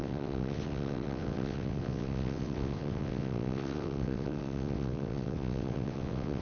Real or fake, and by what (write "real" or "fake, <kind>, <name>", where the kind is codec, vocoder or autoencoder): fake, vocoder, WaveNeXt